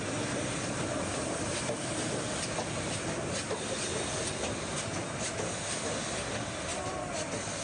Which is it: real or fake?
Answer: real